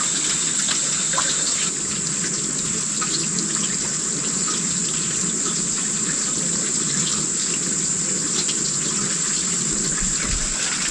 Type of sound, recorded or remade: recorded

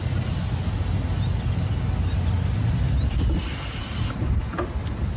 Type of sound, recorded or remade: recorded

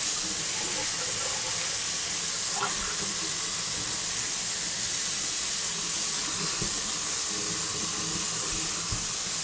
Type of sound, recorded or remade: recorded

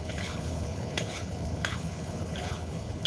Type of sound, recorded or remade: remade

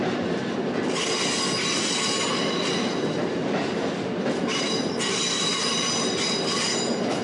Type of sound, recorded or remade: recorded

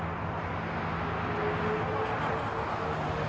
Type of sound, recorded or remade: recorded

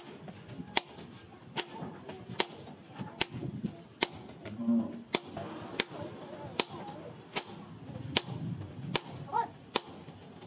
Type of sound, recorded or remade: recorded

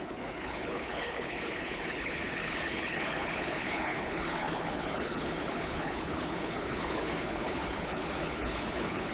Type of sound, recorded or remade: remade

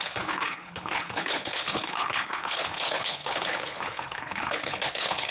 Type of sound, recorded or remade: remade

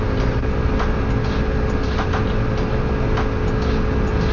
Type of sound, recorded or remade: recorded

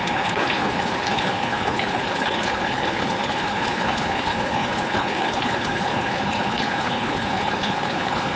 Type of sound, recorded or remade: remade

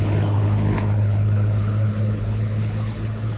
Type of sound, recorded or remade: remade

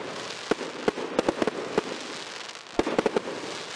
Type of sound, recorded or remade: recorded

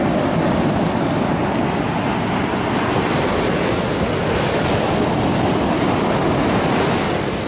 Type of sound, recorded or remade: recorded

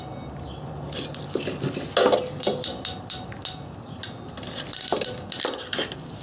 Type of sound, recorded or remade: recorded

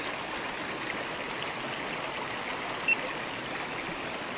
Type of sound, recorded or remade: recorded